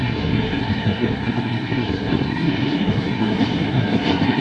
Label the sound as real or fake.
fake